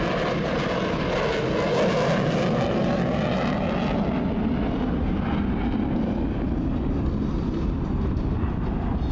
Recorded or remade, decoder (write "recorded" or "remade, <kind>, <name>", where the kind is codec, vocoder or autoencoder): recorded